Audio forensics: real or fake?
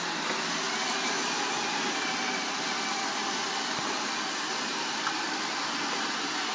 real